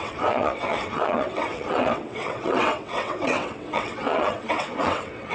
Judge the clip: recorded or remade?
remade